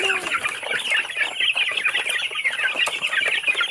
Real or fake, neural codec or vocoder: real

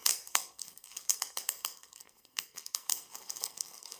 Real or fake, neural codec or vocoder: fake, codec, SNAC